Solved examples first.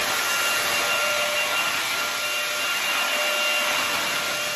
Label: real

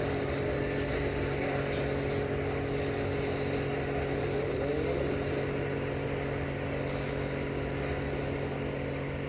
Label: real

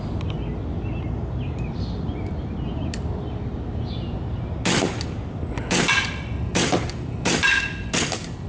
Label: real